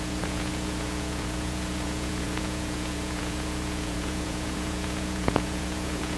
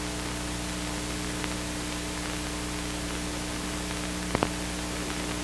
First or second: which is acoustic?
second